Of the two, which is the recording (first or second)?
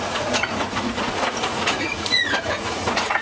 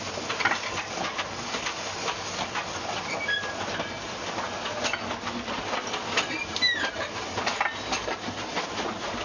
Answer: second